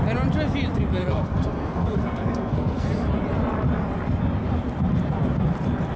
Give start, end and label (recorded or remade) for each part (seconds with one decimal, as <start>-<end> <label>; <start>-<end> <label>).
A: 0.0-1.0 recorded; 1.0-2.9 remade; 2.9-6.0 recorded